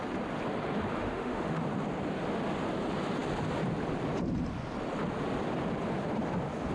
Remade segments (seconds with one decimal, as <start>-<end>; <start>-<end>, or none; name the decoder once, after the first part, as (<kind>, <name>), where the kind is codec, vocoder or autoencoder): 1.0-1.6 (autoencoder, DAC-VAE)